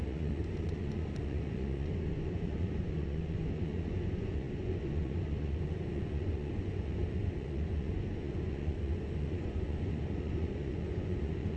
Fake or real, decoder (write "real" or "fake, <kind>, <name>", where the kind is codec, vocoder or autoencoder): fake, vocoder, Vocos